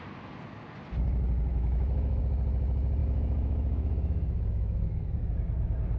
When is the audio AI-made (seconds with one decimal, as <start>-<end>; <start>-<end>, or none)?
1.5-2.2; 3.0-5.0